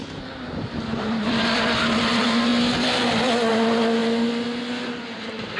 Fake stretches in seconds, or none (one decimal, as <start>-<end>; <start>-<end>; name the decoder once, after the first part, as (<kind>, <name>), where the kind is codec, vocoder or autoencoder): 0.6-2.5 (vocoder, BigVGAN v2); 3.5-4.0; 5.0-5.6